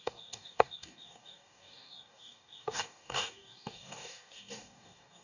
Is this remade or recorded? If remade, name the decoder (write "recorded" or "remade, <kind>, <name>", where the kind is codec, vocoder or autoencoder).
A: remade, codec, DAC